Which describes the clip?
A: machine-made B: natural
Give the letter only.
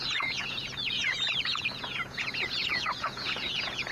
A